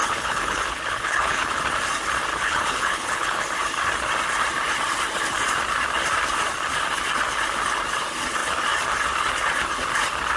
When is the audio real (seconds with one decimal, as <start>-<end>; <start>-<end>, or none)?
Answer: 1.6-2.3; 3.4-10.4